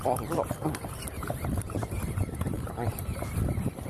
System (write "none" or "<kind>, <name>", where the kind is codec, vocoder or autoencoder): vocoder, BigVGAN v2